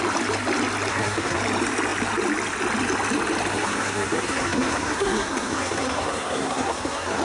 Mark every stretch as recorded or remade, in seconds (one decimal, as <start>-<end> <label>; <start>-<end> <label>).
0.0-0.9 recorded; 0.9-1.4 remade; 1.4-3.5 recorded; 3.5-7.2 remade